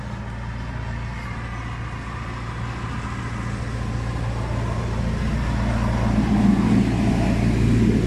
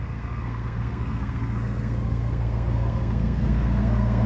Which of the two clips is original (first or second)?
first